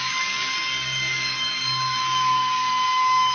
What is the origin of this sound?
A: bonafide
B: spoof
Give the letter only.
B